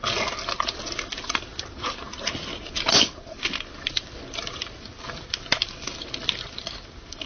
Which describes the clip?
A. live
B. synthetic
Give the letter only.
A